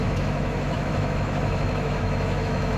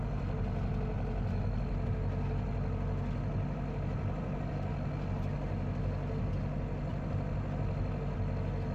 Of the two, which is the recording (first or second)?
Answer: second